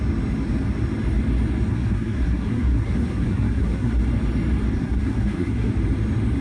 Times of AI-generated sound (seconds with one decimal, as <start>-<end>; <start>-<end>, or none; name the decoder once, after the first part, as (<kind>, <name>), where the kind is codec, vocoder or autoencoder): 1.7-4.0 (codec, SNAC); 4.8-5.7